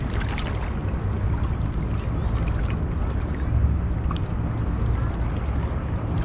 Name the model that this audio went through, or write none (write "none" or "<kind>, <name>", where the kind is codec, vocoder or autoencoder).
none